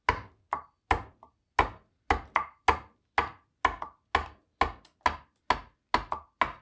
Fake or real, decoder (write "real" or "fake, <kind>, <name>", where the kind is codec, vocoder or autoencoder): real